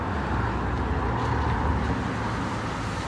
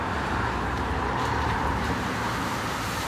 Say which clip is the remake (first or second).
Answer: second